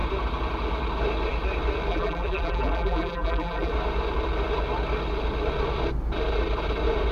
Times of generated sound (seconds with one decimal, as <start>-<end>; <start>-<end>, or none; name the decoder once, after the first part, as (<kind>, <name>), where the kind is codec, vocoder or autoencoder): 1.9-3.7 (vocoder, BigVGAN v2)